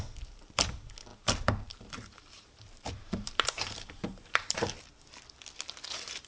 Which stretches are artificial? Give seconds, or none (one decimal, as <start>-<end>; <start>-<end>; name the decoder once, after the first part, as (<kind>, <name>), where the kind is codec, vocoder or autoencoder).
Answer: 1.1-4.9 (vocoder, BigVGAN v2)